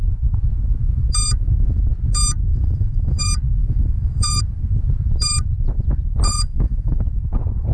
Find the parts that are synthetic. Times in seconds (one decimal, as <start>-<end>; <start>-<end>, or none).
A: 2.5-3.2; 3.6-4.4; 6.3-6.9